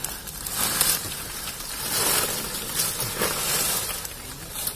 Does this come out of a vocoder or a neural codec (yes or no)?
no